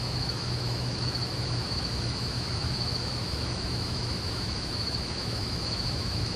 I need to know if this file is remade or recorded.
remade